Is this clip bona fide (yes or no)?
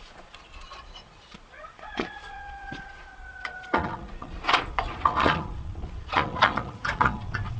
no